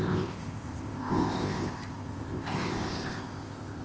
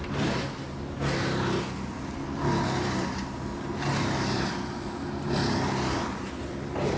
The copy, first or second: first